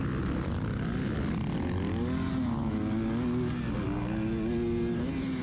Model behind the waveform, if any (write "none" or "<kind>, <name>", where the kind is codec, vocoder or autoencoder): none